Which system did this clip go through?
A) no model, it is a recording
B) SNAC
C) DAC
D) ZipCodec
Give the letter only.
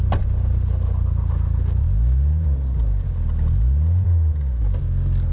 A